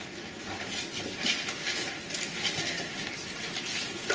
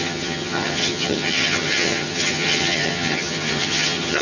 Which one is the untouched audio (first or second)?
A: first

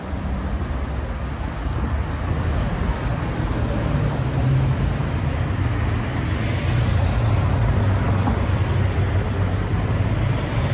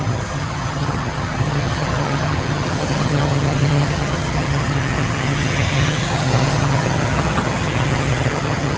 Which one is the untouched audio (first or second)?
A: first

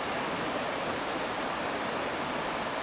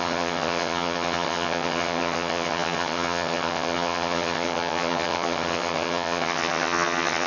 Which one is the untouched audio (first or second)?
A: first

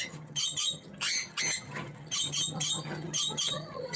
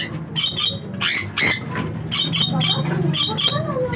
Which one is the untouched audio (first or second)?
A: second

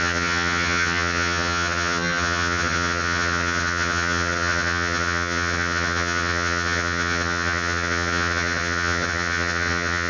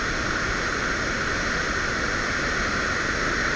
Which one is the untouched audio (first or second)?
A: second